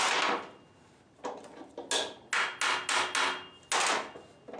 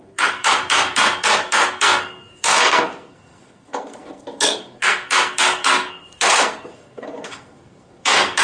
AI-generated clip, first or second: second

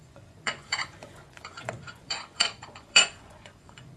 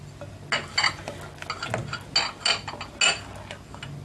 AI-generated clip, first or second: first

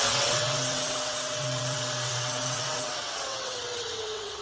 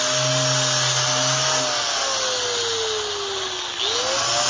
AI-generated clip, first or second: first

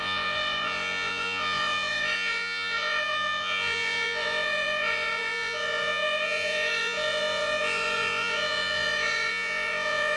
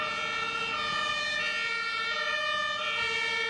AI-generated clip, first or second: first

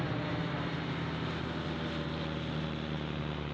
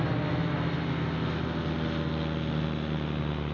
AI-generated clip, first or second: first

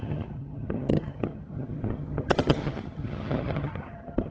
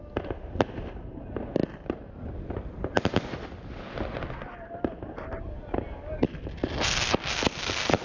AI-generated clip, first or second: first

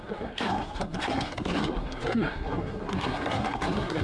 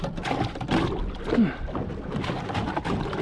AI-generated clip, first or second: first